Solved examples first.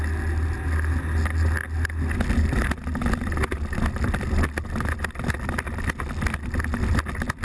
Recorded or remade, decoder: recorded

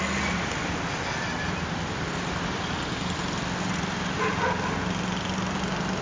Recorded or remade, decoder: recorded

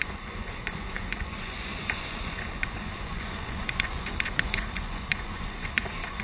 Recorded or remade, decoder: remade, vocoder, Vocos